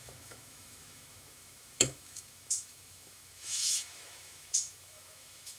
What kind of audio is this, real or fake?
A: fake